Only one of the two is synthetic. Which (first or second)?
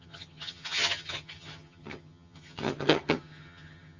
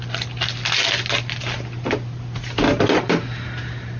first